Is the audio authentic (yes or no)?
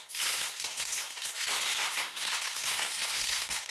no